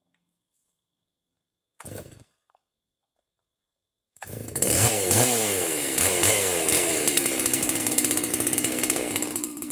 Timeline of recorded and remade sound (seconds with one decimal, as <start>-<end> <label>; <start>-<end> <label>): 0.0-9.7 remade